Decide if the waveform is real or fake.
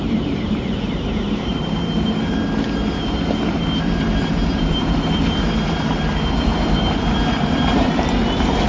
fake